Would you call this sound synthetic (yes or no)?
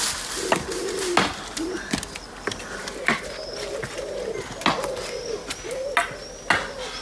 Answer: no